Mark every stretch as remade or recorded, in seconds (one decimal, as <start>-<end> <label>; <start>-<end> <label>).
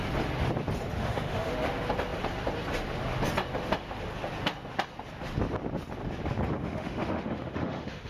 0.0-1.0 recorded; 1.0-1.5 remade; 1.5-6.6 recorded; 6.6-8.1 remade